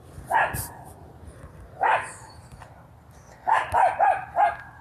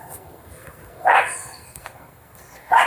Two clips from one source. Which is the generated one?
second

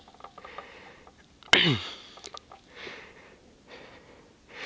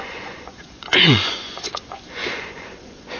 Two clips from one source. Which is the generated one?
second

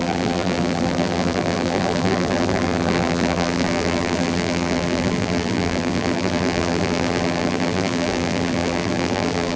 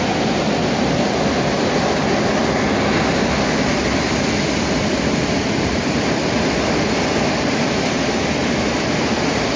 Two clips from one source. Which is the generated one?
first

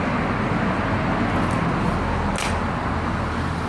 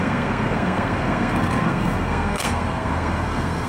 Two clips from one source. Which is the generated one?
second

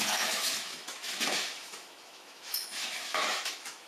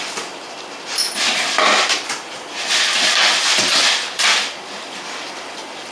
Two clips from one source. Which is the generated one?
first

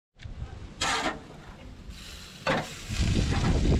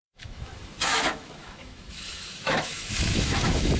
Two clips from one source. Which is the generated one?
second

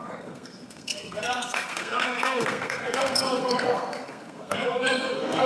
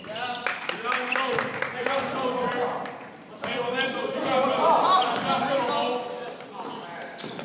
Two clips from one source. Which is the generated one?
first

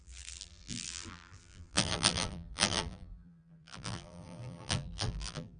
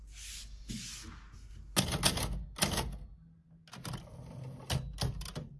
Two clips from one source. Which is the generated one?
first